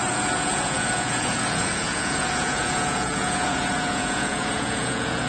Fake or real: fake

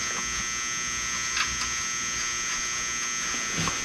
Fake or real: real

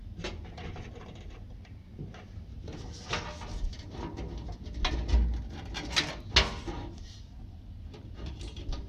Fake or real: real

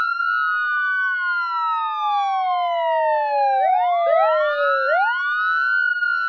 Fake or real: real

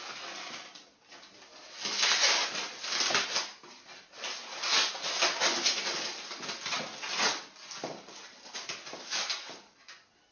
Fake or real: real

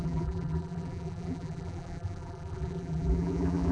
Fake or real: fake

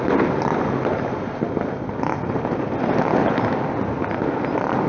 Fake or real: real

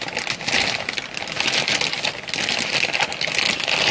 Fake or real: real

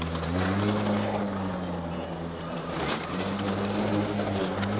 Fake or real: real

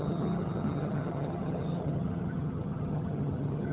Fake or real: fake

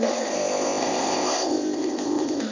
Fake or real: fake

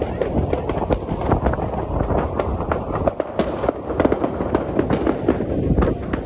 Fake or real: real